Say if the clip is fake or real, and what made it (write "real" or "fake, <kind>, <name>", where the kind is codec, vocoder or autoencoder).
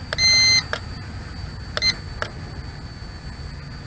real